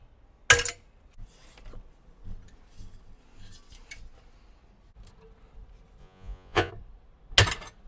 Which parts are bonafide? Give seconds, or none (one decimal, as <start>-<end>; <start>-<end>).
0.0-6.0; 6.7-7.9